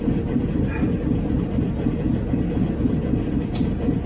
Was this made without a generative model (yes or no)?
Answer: yes